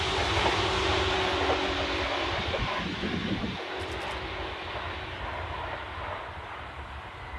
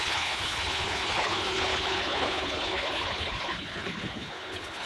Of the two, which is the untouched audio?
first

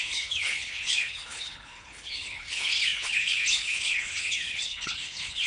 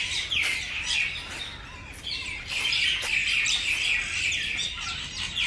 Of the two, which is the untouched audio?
second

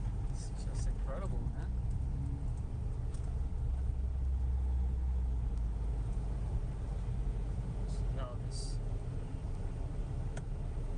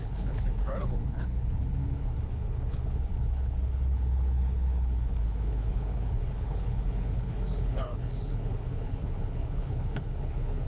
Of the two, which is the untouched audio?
first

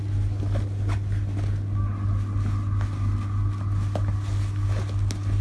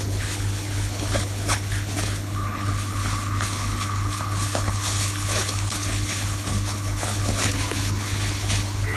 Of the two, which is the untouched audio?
first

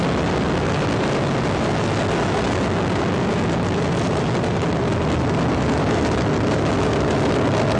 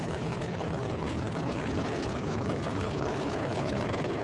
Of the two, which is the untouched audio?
first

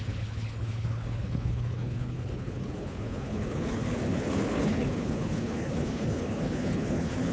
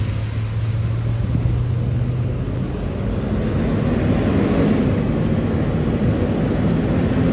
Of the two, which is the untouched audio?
second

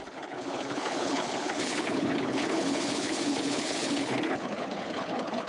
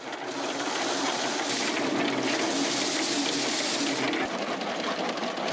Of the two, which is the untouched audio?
second